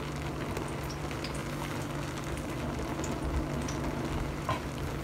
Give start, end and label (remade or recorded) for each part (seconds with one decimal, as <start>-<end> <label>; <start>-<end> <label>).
0.0-5.0 recorded